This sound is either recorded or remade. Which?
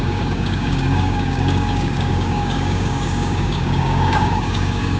remade